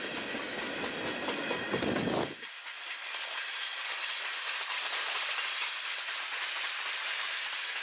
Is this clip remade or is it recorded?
recorded